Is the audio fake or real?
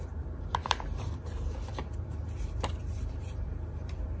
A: fake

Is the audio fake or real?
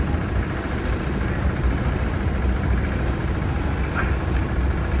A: real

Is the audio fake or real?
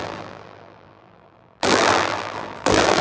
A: fake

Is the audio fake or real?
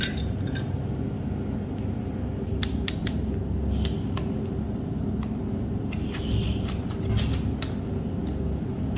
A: real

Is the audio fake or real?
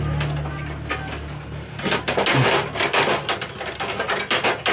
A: real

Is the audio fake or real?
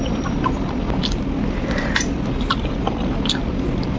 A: real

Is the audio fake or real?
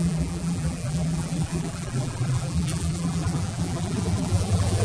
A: fake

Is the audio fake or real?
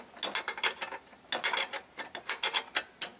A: real